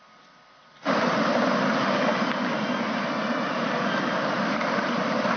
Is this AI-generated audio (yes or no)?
no